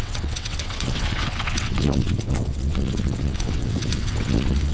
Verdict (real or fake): fake